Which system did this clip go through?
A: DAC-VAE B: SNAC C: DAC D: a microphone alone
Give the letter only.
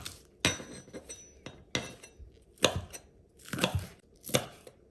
D